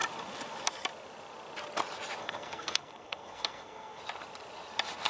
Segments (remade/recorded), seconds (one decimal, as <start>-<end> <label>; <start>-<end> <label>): 0.0-2.2 recorded; 2.2-4.0 remade; 4.0-5.1 recorded